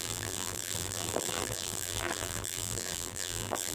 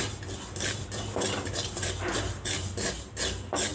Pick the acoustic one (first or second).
second